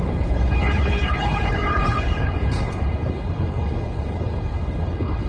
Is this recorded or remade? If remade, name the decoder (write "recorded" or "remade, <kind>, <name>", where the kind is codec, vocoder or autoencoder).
remade, codec, HILCodec